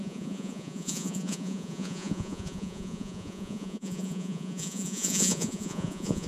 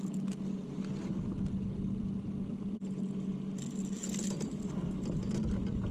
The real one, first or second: second